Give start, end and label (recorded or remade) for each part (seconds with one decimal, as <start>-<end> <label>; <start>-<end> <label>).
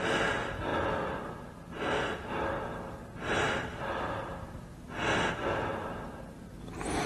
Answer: 0.0-7.1 recorded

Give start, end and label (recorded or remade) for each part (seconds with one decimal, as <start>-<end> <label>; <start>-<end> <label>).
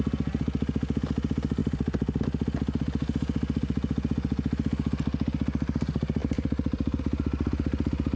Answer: 0.0-1.6 recorded; 1.6-2.2 remade; 2.2-6.2 recorded; 6.2-7.0 remade; 7.0-8.2 recorded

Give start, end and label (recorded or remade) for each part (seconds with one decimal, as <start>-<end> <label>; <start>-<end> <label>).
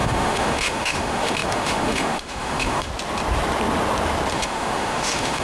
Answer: 0.0-2.9 remade; 2.9-4.3 recorded; 4.3-5.4 remade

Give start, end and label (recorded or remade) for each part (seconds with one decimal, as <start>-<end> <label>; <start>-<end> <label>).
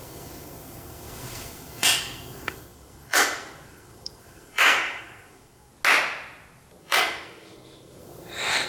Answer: 0.0-5.7 remade; 5.7-6.8 recorded; 6.8-8.7 remade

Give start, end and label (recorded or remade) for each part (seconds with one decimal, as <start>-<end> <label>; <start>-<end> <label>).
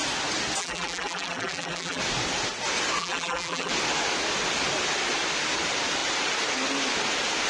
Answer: 0.0-0.6 recorded; 0.6-2.0 remade; 2.0-3.0 recorded; 3.0-3.7 remade; 3.7-7.5 recorded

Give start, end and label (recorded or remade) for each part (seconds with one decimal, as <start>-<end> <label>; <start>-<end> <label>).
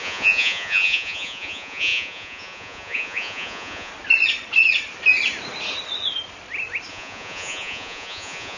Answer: 0.0-3.9 remade; 3.9-6.9 recorded; 6.9-8.6 remade